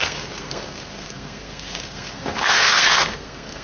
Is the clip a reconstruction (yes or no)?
yes